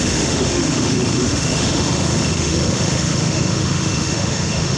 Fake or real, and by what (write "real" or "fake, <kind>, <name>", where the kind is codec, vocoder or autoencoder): fake, autoencoder, DAC-VAE